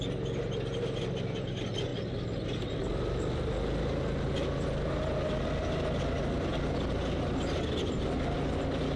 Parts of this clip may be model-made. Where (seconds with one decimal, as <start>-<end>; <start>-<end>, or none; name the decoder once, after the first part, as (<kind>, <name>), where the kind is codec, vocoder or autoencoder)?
none

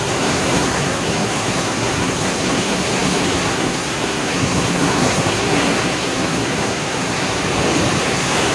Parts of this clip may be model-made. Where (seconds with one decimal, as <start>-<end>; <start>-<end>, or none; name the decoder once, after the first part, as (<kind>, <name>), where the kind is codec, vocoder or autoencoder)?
0.0-7.4 (codec, SNAC); 8.0-8.5

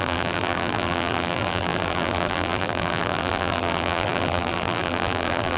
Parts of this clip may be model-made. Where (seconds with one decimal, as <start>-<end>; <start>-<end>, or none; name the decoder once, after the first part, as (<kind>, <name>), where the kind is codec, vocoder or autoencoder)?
0.0-5.6 (vocoder, BigVGAN v2)

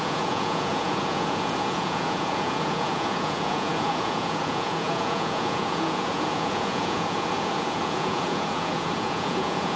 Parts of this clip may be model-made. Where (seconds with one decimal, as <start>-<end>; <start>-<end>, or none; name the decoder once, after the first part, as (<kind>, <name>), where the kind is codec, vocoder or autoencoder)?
0.0-9.8 (vocoder, Vocos)